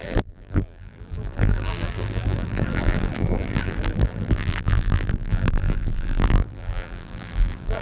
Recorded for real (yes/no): no